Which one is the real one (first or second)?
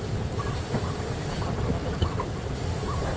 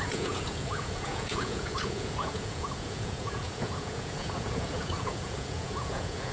first